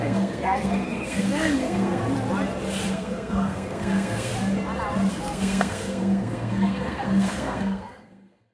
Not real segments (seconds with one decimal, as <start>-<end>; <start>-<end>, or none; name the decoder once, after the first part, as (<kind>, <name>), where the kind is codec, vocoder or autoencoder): 0.0-2.0 (codec, SNAC); 2.9-4.3; 5.1-8.5